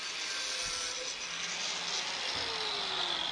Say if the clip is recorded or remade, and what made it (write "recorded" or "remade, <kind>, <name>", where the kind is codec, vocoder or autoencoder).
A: recorded